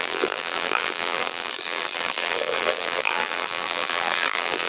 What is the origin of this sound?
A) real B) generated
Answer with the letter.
B